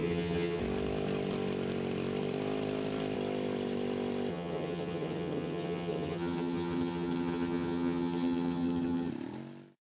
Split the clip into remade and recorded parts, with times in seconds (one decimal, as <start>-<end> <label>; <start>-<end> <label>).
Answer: 0.0-0.6 remade; 0.6-4.3 recorded; 4.3-9.1 remade; 9.1-9.9 recorded